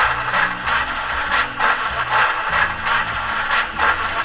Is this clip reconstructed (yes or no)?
no